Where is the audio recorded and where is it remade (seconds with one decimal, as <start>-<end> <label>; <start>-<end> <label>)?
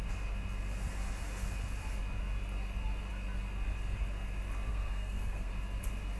0.0-4.7 recorded; 4.7-5.5 remade; 5.5-6.2 recorded